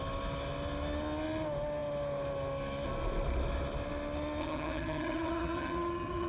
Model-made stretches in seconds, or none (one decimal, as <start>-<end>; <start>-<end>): 4.4-6.3